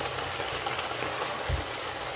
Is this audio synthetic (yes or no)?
no